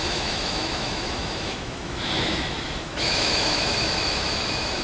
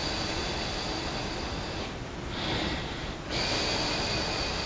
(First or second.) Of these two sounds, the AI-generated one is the first